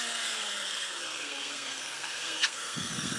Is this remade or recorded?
remade